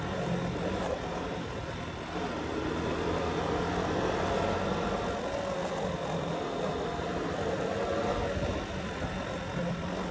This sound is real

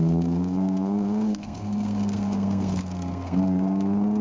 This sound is fake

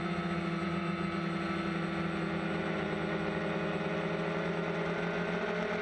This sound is real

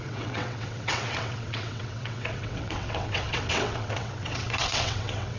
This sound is fake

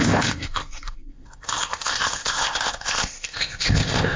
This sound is fake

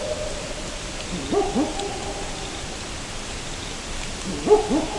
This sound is real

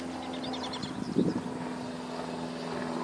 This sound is real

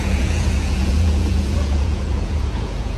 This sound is fake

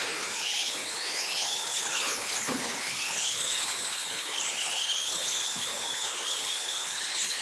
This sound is fake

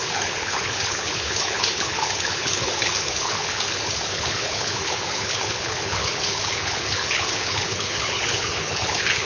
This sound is fake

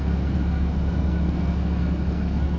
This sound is fake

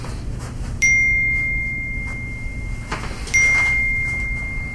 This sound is real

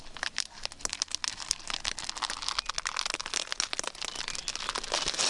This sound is real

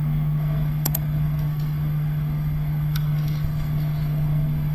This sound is fake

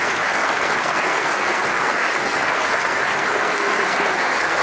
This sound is fake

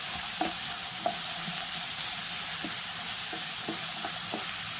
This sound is real